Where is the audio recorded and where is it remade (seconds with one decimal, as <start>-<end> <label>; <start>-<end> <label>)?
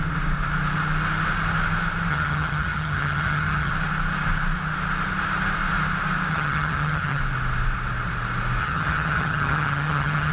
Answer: 0.0-2.1 recorded; 2.1-3.7 remade; 3.7-6.3 recorded; 6.3-7.2 remade; 7.2-8.6 recorded; 8.6-10.3 remade